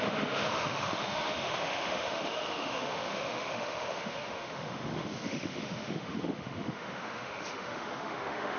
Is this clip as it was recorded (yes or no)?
no